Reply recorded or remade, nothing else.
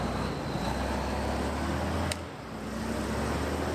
recorded